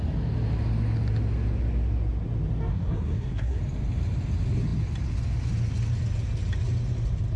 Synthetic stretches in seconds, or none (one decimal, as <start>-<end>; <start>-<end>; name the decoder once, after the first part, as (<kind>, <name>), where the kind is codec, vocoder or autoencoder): 2.7-3.6 (codec, SNAC)